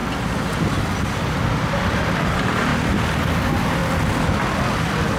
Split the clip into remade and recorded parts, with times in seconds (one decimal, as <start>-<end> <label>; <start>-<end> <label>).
0.0-1.0 recorded; 1.0-2.7 remade; 2.7-3.4 recorded; 3.4-3.8 remade; 3.8-5.2 recorded